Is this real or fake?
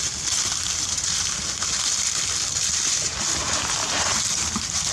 real